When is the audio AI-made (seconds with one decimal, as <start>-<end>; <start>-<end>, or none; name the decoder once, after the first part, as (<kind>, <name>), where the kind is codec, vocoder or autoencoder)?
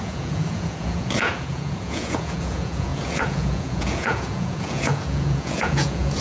0.0-6.2 (vocoder, Vocos)